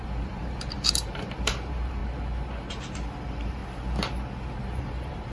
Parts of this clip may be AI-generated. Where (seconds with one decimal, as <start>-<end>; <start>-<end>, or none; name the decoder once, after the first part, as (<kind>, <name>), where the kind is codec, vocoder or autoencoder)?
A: 0.0-2.0 (vocoder, BigVGAN v2); 2.7-3.6; 4.8-5.3